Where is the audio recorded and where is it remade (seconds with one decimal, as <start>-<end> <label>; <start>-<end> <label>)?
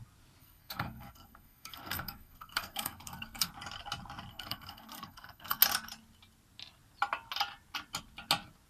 0.0-0.4 recorded; 0.4-3.5 remade; 3.5-4.3 recorded; 4.3-5.6 remade; 5.6-8.7 recorded